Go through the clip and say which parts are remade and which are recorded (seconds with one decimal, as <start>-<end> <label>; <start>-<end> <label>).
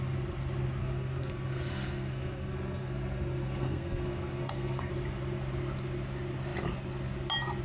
0.0-0.8 recorded; 0.8-4.9 remade; 4.9-7.6 recorded